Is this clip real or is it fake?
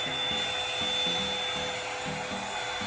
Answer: real